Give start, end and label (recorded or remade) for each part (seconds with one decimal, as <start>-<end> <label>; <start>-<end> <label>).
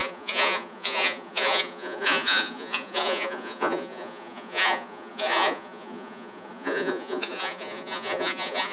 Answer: 0.0-8.7 remade